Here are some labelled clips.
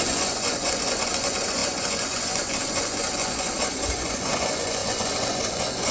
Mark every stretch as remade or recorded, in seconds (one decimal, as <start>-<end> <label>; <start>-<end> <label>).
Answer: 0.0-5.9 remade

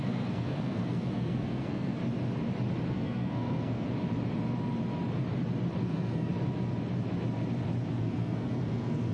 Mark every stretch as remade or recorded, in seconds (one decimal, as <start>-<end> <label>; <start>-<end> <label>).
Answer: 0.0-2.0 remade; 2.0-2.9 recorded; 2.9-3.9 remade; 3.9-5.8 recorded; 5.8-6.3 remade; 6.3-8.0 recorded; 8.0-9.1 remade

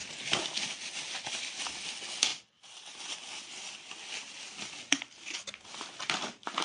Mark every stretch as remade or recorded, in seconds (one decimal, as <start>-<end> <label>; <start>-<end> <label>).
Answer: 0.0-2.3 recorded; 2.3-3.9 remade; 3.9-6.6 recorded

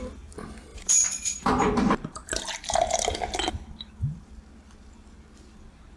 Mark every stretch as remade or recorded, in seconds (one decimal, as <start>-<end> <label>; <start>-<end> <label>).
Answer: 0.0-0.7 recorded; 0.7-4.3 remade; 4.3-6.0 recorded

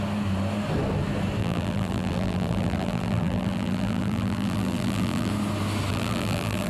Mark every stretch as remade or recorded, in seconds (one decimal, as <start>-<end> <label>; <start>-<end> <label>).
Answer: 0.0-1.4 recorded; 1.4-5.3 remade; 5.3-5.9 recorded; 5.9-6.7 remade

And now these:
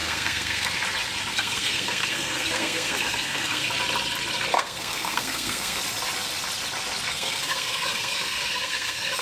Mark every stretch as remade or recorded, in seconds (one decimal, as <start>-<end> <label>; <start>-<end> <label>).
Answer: 0.0-0.8 remade; 0.8-1.3 recorded; 1.3-3.7 remade; 3.7-4.5 recorded; 4.5-5.8 remade; 5.8-7.1 recorded; 7.1-9.2 remade